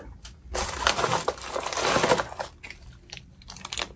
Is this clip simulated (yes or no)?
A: no